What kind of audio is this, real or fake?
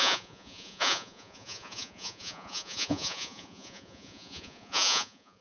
fake